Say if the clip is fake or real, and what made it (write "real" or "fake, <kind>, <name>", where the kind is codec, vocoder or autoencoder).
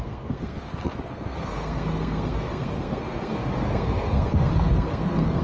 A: fake, codec, SNAC